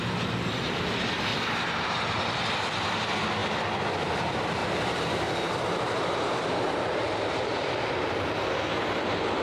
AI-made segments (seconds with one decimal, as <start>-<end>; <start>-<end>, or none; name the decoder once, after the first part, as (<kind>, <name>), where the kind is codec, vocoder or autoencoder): 1.3-2.0 (vocoder, BigVGAN v2); 4.6-8.6